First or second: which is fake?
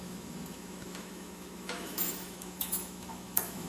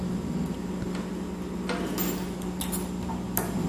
first